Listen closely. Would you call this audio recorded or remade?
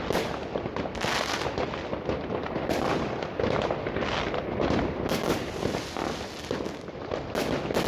recorded